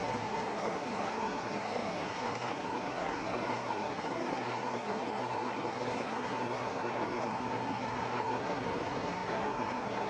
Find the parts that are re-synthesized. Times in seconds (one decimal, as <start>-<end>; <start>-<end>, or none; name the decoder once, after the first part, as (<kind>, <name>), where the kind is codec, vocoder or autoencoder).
0.0-10.1 (codec, SNAC)